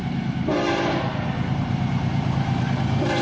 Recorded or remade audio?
remade